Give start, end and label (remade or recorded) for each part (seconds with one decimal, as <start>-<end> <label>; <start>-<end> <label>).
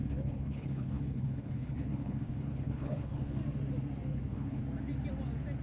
0.0-3.4 remade; 3.4-4.1 recorded; 4.1-4.6 remade; 4.6-5.6 recorded